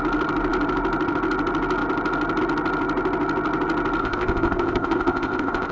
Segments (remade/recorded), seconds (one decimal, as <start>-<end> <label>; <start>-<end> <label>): 0.0-4.0 recorded; 4.0-5.7 remade